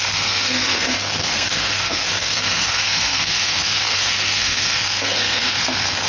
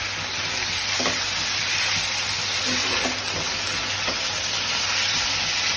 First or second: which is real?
second